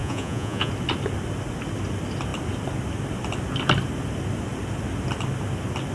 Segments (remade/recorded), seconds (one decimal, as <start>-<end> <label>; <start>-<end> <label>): 0.0-0.7 remade; 0.7-5.9 recorded